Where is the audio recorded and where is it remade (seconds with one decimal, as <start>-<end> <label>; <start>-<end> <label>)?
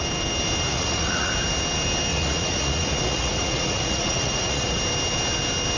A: 0.0-0.7 recorded; 0.7-1.3 remade; 1.3-2.1 recorded; 2.1-4.8 remade; 4.8-5.8 recorded